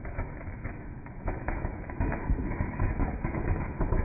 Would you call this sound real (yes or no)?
no